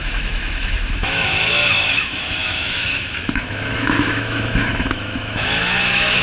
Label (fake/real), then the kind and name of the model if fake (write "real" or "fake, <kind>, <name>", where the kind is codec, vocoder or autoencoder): fake, autoencoder, DAC-VAE